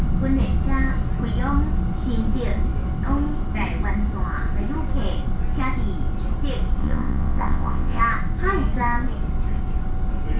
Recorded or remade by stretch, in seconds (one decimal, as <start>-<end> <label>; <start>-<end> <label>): 0.0-6.8 recorded; 6.8-8.0 remade; 8.0-10.4 recorded